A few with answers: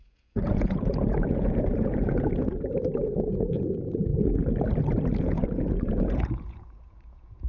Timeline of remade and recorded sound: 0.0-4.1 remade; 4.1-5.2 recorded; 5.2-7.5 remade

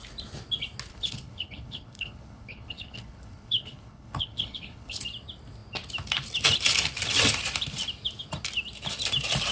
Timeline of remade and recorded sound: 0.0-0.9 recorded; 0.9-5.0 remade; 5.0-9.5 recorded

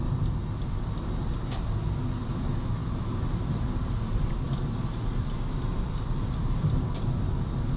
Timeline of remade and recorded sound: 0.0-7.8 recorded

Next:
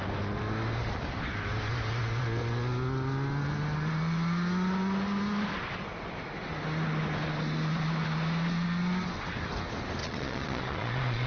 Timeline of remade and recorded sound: 0.0-10.0 recorded; 10.0-11.3 remade